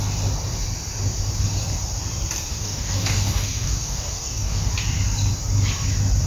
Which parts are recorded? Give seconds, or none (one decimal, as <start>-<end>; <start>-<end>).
0.0-2.5; 4.7-6.3